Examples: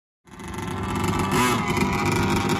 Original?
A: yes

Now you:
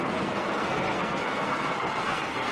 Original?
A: no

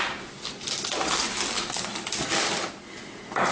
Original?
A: yes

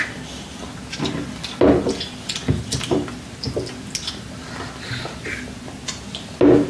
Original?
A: yes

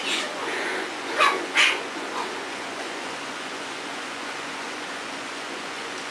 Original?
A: no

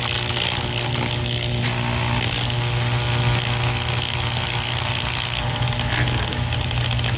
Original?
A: yes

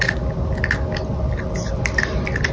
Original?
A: yes